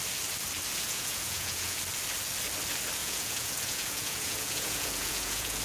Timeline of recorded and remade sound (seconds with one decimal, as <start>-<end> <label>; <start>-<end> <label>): 0.0-0.7 recorded; 0.7-1.8 remade; 1.8-3.0 recorded; 3.0-5.6 remade